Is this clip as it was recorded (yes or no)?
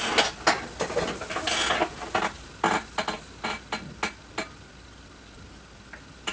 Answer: yes